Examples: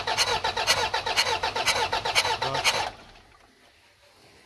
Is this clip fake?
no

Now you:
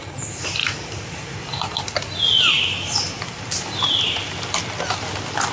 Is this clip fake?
no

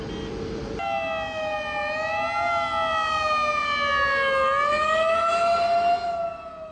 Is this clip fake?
no